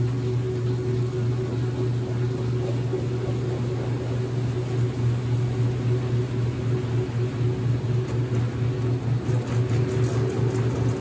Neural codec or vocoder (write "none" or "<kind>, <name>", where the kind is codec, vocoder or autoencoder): none